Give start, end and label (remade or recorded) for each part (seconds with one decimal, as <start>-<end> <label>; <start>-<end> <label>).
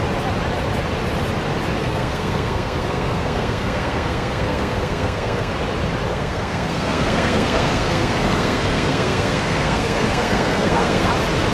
0.0-1.8 recorded; 1.8-5.5 remade; 5.5-6.1 recorded; 6.1-11.1 remade; 11.1-11.5 recorded